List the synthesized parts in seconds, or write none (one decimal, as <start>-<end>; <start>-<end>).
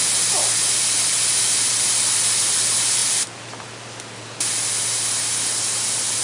none